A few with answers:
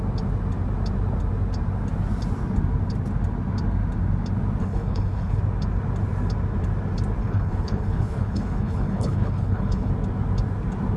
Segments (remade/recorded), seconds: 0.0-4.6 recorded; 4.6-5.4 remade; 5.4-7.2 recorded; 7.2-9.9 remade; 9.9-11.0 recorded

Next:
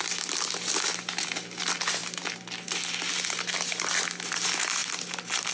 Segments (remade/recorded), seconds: 0.0-5.5 recorded

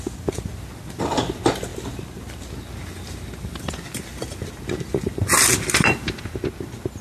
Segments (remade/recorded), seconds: 0.0-7.0 recorded